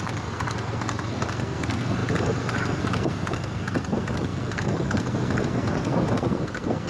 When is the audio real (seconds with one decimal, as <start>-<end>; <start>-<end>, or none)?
none

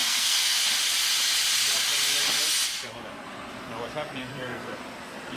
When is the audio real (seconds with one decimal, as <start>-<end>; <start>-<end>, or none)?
0.6-4.2; 4.8-5.4

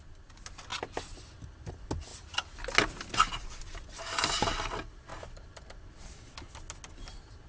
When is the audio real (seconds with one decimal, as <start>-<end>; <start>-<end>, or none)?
0.0-5.1; 5.7-7.5

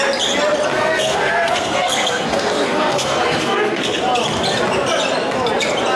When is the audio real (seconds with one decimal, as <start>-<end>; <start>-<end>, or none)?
0.0-0.7; 4.0-6.0

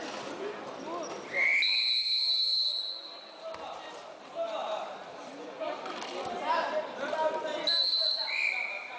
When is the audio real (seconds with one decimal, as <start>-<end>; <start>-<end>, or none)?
0.0-4.6; 8.5-9.0

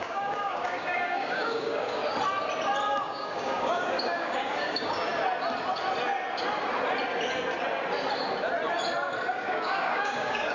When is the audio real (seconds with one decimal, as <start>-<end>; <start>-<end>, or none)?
2.0-3.0; 5.1-9.3